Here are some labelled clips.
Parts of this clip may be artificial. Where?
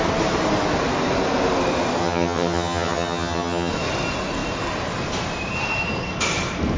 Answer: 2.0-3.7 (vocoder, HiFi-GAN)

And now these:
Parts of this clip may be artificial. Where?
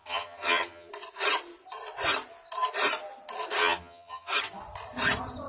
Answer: 0.0-0.9 (vocoder, HiFi-GAN); 3.6-4.3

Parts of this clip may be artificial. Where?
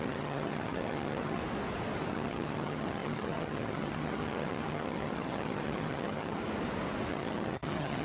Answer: 0.0-1.4 (vocoder, HiFi-GAN); 2.1-6.4; 7.1-8.0